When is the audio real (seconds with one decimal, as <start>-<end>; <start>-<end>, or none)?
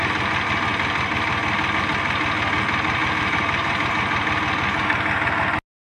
0.0-3.0; 3.9-5.8